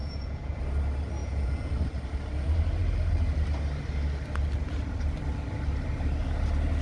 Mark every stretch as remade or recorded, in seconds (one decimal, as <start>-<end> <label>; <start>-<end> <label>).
0.0-0.6 remade; 0.6-1.2 recorded; 1.2-1.7 remade; 1.7-6.8 recorded